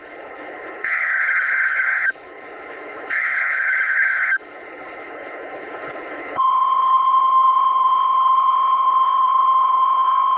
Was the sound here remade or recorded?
remade